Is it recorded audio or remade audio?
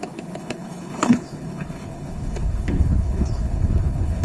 remade